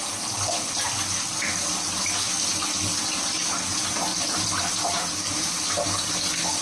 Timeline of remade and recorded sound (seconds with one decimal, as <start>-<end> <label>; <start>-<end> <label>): 0.0-4.1 recorded; 4.1-6.1 remade; 6.1-6.6 recorded